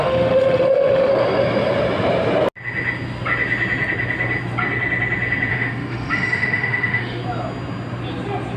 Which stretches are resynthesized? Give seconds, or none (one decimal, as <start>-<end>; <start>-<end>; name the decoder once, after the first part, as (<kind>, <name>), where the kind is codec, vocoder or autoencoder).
0.0-1.1 (autoencoder, DAC-VAE); 5.5-7.2